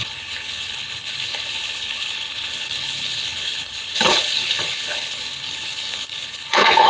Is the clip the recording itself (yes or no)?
no